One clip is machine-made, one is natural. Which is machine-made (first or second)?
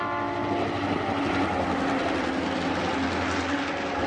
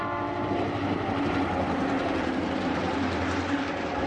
second